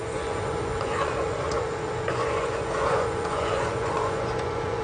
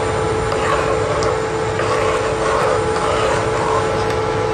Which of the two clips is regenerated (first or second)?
first